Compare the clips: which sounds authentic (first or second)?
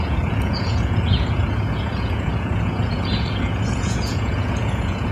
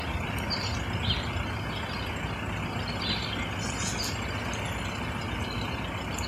second